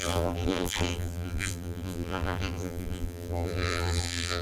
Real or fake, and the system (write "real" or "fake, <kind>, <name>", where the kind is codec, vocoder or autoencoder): fake, vocoder, BigVGAN v2